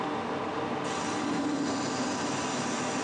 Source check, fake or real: real